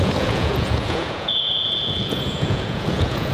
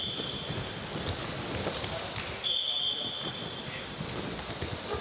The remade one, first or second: first